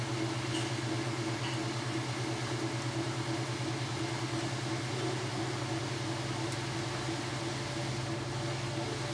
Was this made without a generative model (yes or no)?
yes